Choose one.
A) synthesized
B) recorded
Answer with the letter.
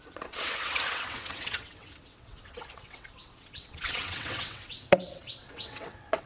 A